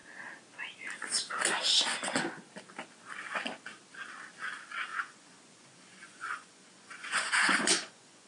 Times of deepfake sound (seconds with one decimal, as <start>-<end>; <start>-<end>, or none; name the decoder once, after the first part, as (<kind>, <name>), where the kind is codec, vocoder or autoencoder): 4.9-8.3 (vocoder, Vocos)